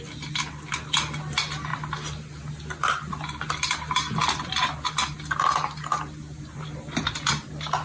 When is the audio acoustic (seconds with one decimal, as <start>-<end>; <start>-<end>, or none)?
0.0-7.8